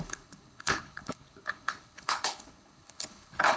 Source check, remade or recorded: remade